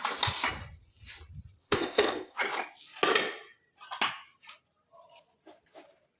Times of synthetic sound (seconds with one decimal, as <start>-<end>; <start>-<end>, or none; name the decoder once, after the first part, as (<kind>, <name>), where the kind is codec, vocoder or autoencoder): 1.6-2.4 (codec, ZipCodec)